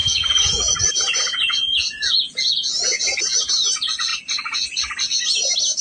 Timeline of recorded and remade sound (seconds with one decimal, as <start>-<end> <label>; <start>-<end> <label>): 0.0-3.5 remade; 3.5-5.8 recorded